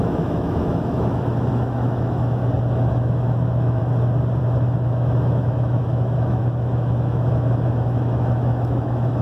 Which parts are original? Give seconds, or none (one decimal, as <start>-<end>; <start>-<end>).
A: 2.4-2.9; 3.8-4.4